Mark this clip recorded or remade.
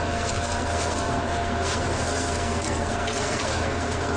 remade